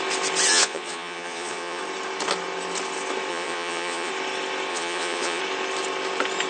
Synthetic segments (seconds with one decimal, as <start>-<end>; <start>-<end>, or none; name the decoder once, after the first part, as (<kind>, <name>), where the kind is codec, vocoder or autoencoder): 0.5-1.8 (vocoder, Vocos); 3.3-4.1; 4.7-5.4